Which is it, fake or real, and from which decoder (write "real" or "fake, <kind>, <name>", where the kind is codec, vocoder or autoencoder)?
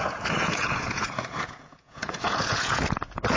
fake, vocoder, Vocos